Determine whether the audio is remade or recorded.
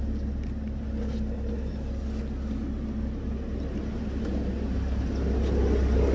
recorded